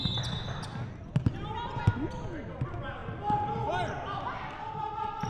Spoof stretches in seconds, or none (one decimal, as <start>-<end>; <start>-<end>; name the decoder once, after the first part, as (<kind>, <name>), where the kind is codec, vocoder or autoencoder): none